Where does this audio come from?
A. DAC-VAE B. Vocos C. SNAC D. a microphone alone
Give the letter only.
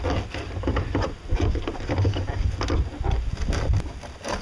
D